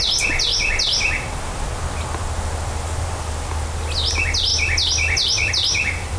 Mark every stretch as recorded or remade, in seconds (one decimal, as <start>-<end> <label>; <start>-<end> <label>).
0.0-6.2 recorded

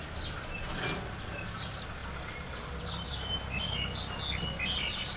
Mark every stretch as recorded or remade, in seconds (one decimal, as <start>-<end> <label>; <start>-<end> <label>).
0.0-5.2 recorded